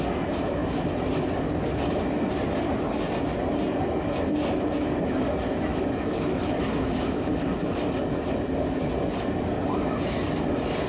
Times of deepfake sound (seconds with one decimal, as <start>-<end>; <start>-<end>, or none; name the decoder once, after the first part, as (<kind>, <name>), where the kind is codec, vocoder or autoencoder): 5.7-7.3 (autoencoder, DAC-VAE)